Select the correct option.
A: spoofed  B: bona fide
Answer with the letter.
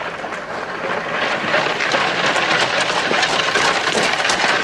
B